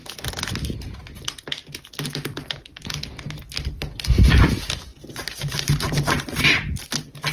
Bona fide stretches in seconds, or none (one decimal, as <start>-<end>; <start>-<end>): 0.0-7.3